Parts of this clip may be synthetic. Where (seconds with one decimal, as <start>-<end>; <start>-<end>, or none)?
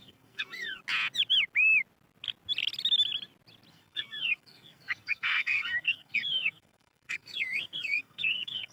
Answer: 0.0-0.8; 3.7-8.7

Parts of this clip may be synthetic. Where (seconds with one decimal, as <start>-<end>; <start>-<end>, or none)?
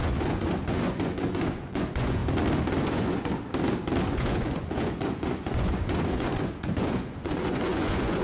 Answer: 0.0-2.2; 2.8-3.3; 4.0-8.2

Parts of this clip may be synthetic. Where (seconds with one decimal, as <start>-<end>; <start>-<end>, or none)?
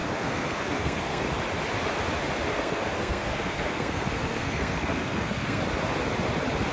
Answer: 0.0-1.2; 2.5-5.6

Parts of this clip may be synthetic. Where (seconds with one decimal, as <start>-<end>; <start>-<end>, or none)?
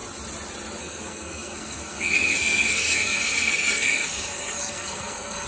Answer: 0.8-5.5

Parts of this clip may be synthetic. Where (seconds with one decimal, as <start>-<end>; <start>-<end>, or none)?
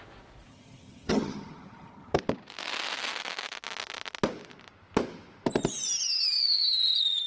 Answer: 0.5-2.1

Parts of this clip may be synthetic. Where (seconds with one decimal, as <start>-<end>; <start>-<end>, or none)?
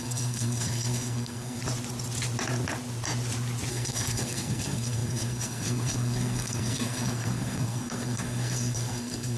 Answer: 0.0-1.6; 3.7-9.4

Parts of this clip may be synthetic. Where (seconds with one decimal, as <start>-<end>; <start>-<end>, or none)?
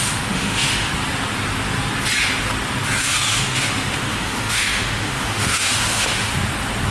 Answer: 0.0-0.9; 3.0-6.3